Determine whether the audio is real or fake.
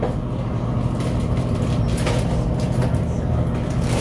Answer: fake